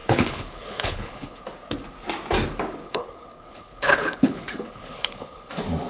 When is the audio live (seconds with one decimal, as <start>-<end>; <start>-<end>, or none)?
1.4-2.8; 5.5-5.9